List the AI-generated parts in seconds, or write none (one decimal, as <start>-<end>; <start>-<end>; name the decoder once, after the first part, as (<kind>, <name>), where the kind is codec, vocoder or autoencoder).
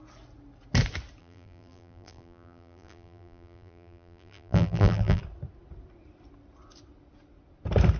1.2-5.2 (vocoder, BigVGAN v2)